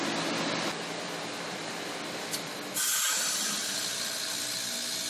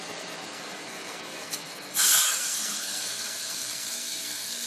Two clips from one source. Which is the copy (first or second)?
second